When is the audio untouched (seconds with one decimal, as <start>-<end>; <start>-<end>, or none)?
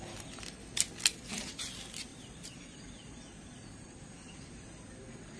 0.0-2.1